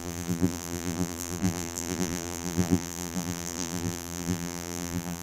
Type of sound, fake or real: fake